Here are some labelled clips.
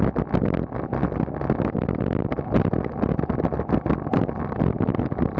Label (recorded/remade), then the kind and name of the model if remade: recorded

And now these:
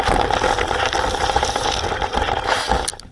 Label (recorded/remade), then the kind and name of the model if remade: recorded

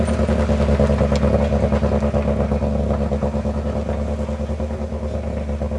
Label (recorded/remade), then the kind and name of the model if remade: recorded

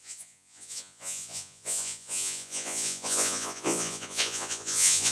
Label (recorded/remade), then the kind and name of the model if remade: remade, vocoder, Vocos